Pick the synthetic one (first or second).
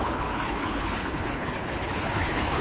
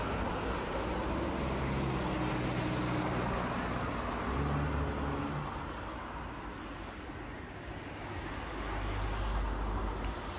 first